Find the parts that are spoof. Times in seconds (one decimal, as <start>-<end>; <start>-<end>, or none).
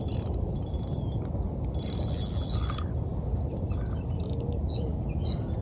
none